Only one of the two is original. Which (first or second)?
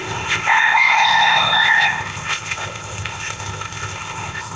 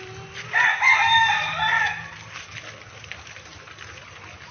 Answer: second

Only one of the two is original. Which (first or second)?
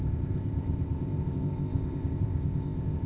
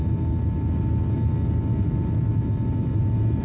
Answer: second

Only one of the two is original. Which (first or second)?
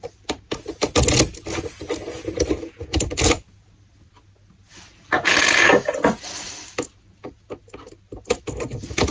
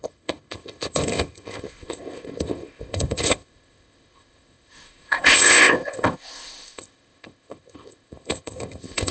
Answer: first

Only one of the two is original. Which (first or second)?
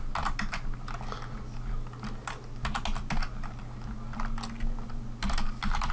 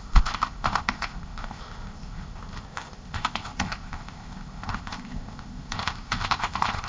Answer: first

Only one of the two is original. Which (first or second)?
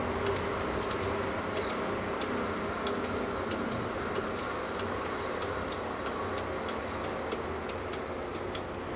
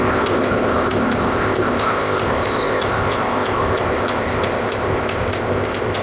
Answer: first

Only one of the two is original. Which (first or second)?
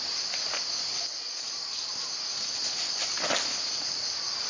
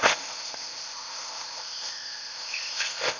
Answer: first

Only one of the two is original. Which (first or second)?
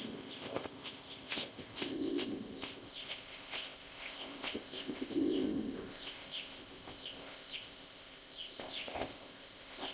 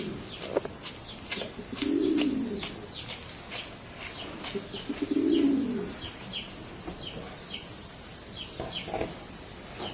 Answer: second